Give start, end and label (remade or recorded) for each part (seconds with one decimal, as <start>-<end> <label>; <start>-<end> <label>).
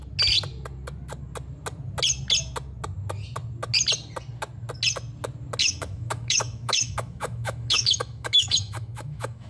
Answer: 0.0-5.6 recorded; 5.6-9.5 remade